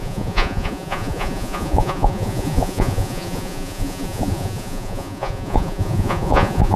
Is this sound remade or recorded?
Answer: remade